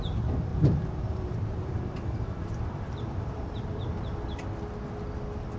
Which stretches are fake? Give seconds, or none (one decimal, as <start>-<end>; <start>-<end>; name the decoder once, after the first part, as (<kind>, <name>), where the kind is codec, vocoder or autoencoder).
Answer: 0.5-3.9 (vocoder, BigVGAN v2)